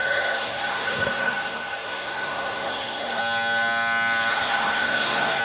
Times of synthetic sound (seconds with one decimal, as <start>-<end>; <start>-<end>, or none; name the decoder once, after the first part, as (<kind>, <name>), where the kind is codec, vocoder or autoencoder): 0.0-3.2 (codec, SNAC); 4.3-5.4